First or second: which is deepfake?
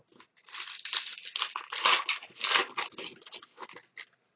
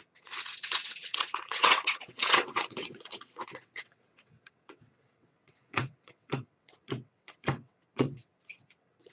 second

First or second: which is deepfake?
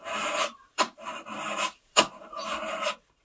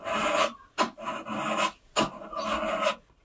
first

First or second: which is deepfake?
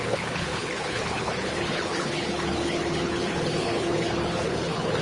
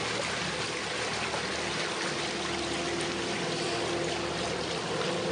first